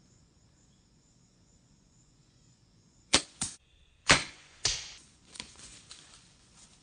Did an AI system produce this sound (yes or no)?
yes